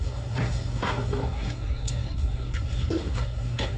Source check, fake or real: fake